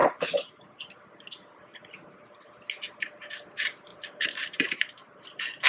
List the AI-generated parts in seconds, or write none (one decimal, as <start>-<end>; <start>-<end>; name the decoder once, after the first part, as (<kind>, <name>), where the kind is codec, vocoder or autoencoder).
0.0-1.1 (vocoder, BigVGAN v2); 3.9-5.2